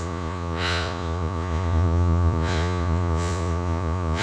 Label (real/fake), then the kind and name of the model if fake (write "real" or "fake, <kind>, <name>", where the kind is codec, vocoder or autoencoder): fake, vocoder, Vocos